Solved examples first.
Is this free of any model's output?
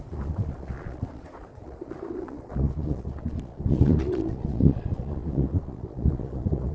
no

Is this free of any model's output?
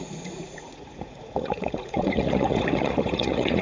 no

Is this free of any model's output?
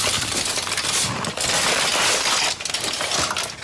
yes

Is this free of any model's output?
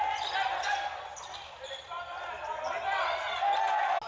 yes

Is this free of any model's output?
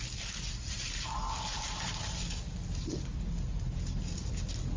yes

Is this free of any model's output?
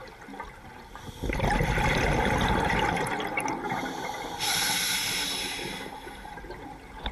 yes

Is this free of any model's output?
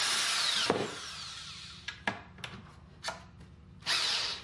yes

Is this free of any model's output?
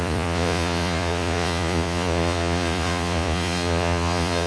no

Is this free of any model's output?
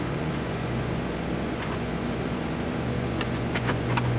no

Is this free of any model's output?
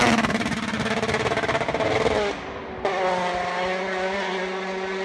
yes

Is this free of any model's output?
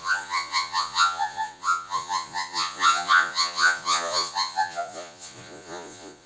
no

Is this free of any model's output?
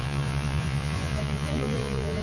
no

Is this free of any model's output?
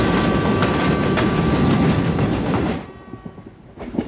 yes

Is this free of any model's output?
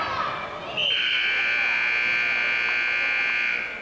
yes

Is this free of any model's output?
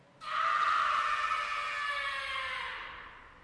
yes